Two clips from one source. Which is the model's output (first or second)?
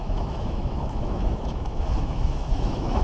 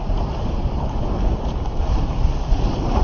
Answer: first